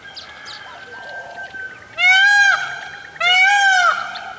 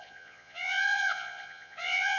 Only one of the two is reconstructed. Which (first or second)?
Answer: second